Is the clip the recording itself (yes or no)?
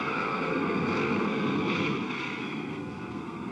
no